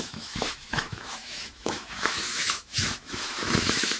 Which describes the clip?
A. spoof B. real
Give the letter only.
A